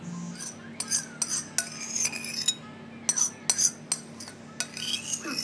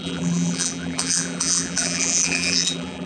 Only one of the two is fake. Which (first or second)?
second